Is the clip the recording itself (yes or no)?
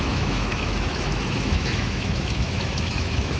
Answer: no